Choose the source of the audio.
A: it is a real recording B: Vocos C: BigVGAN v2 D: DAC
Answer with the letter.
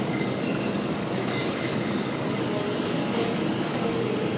D